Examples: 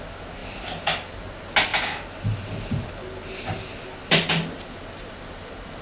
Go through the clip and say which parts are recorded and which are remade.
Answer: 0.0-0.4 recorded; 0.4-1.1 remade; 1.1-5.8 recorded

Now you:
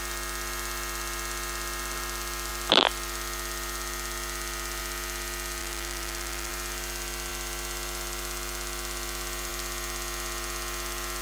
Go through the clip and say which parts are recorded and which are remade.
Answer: 0.0-5.6 recorded; 5.6-6.5 remade; 6.5-11.2 recorded

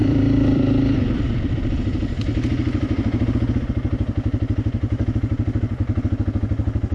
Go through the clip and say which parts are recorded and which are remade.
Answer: 0.0-1.4 remade; 1.4-6.9 recorded

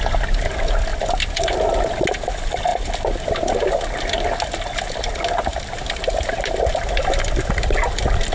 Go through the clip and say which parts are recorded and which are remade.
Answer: 0.0-5.5 recorded; 5.5-6.6 remade; 6.6-8.3 recorded

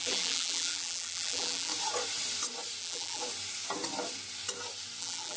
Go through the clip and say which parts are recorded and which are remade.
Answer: 0.0-1.7 remade; 1.7-2.8 recorded; 2.8-3.2 remade; 3.2-5.0 recorded; 5.0-5.4 remade

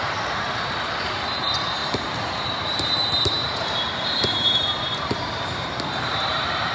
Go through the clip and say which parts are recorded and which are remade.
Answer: 0.0-6.7 remade